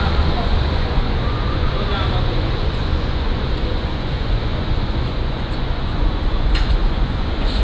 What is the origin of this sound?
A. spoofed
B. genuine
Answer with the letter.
A